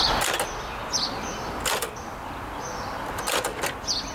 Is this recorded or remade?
recorded